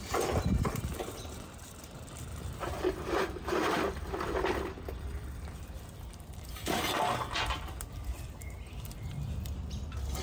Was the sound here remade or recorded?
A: remade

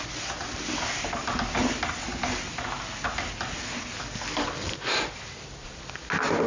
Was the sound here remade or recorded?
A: recorded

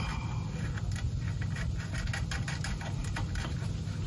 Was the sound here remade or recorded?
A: recorded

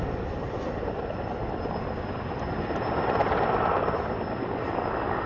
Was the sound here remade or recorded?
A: recorded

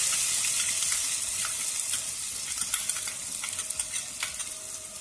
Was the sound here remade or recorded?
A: recorded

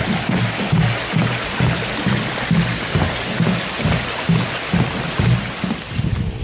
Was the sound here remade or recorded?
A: recorded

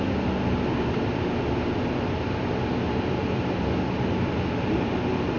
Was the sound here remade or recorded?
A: recorded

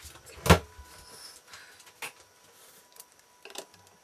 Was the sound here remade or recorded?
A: recorded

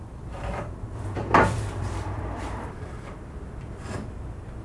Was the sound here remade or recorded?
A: remade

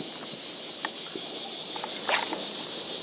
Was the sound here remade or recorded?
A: recorded